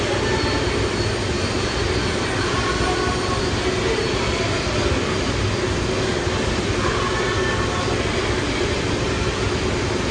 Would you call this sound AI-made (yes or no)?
no